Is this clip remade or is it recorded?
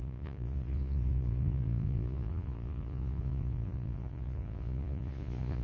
remade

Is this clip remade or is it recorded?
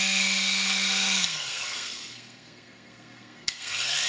remade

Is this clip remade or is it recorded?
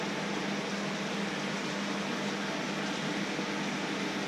recorded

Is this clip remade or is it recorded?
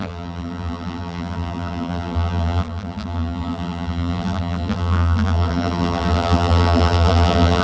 remade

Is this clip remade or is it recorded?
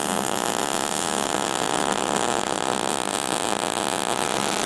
recorded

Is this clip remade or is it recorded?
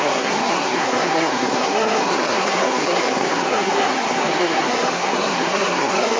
remade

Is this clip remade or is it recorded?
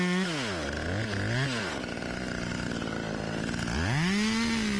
recorded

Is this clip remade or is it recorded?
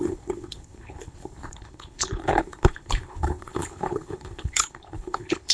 remade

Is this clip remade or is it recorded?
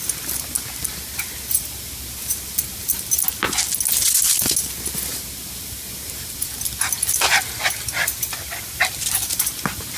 recorded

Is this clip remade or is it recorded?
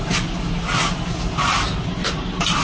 recorded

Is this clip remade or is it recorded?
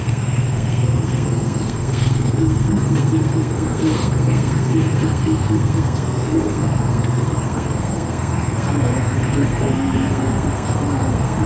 remade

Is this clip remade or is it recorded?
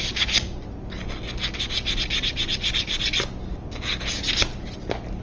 recorded